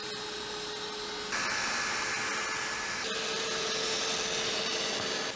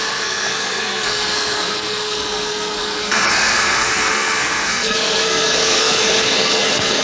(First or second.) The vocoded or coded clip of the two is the second